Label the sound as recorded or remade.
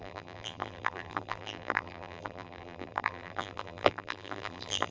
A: remade